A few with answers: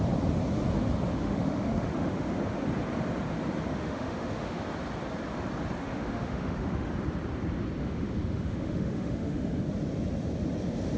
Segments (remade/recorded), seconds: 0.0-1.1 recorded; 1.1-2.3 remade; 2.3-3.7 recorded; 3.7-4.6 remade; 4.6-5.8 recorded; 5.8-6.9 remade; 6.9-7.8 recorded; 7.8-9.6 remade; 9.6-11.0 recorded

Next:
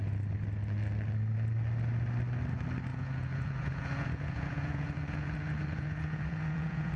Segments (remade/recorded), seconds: 0.0-2.9 recorded; 2.9-7.0 remade